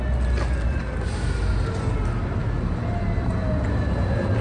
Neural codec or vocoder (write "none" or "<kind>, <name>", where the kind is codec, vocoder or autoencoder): none